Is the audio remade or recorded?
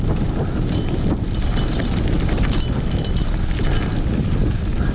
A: recorded